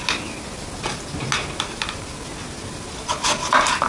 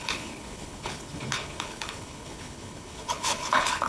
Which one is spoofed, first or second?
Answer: second